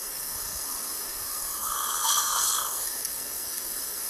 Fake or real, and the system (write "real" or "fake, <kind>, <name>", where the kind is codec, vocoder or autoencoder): fake, codec, SNAC